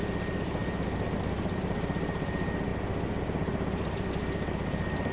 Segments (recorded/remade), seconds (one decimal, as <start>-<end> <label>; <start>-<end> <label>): 0.0-5.1 recorded